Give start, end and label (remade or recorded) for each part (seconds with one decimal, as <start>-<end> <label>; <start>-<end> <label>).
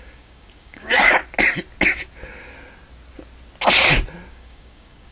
0.0-1.2 remade; 1.2-4.3 recorded; 4.3-5.1 remade